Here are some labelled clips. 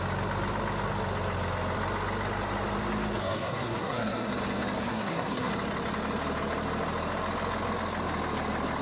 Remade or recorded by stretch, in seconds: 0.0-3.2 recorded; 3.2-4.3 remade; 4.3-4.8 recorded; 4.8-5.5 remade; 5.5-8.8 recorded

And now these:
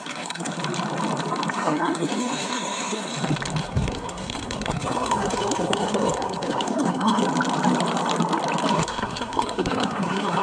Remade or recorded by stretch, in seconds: 0.0-0.5 remade; 0.5-1.5 recorded; 1.5-3.1 remade; 3.1-3.6 recorded; 3.6-7.2 remade; 7.2-8.7 recorded; 8.7-10.4 remade

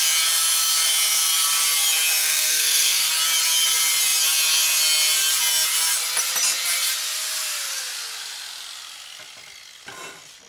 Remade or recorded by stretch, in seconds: 0.0-2.2 recorded; 2.2-3.1 remade; 3.1-10.5 recorded

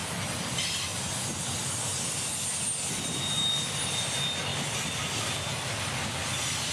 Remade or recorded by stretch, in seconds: 0.0-6.7 recorded

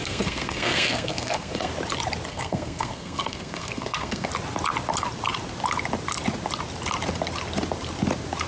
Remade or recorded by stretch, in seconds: 0.0-1.7 remade; 1.7-2.3 recorded; 2.3-4.3 remade; 4.3-8.5 recorded

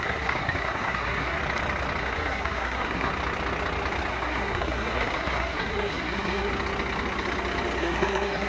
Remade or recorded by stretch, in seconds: 0.0-1.4 remade; 1.4-2.0 recorded; 2.0-3.1 remade; 3.1-4.1 recorded; 4.1-6.5 remade; 6.5-7.8 recorded; 7.8-8.5 remade

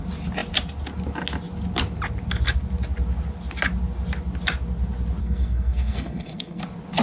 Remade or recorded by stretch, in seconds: 0.0-5.2 recorded; 5.2-6.6 remade; 6.6-7.0 recorded

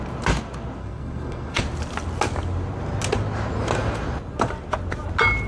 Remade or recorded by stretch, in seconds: 0.0-0.8 recorded; 0.8-1.6 remade; 1.6-5.5 recorded